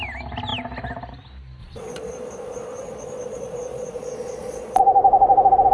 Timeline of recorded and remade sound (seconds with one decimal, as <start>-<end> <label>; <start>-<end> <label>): 0.0-1.6 recorded; 1.6-4.8 remade; 4.8-5.7 recorded

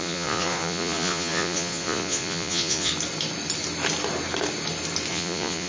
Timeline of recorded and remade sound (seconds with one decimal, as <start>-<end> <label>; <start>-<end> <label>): 0.0-2.9 remade; 2.9-5.1 recorded; 5.1-5.7 remade

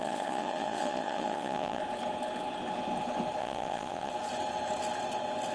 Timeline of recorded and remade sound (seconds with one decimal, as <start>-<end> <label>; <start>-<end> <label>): 0.0-1.8 remade; 1.8-3.4 recorded; 3.4-4.1 remade; 4.1-5.5 recorded

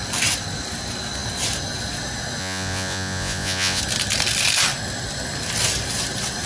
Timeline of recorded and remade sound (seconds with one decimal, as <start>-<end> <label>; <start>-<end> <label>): 0.0-2.4 recorded; 2.4-3.8 remade; 3.8-6.5 recorded

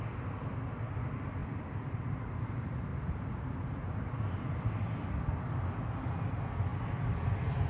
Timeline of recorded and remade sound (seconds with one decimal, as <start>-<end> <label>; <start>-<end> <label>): 0.0-7.7 recorded